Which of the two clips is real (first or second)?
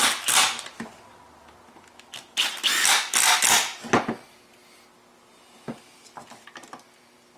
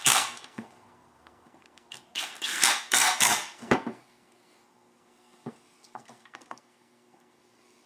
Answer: first